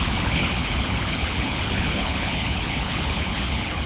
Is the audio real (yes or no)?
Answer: no